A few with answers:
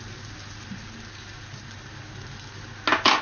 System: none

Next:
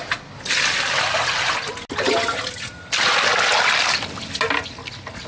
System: none